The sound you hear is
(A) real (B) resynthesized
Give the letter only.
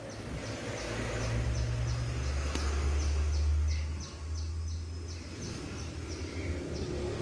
A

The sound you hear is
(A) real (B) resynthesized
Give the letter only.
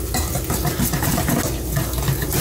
A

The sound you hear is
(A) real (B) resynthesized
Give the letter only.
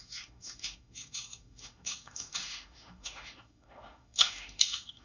B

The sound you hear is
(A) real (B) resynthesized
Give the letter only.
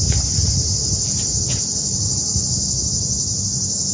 A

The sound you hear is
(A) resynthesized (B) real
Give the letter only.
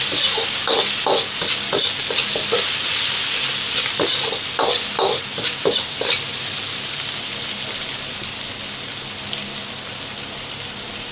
B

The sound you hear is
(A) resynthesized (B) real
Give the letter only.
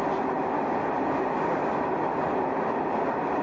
B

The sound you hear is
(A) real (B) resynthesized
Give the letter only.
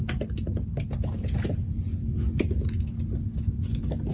A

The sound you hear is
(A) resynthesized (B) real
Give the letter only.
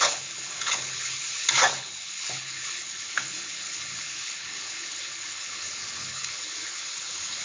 A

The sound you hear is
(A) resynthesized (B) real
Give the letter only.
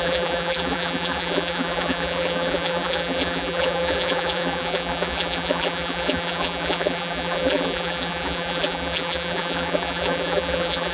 A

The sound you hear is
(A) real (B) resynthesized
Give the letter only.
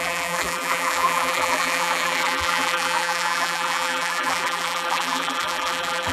B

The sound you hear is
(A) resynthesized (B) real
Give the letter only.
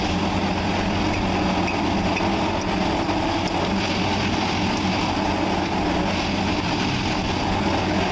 B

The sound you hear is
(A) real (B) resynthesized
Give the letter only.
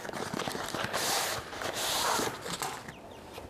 A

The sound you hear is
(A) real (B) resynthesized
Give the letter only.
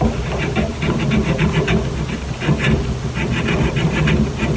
A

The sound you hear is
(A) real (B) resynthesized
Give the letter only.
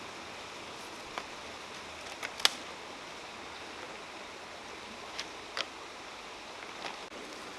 A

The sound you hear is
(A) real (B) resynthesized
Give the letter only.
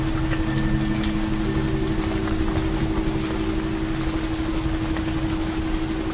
A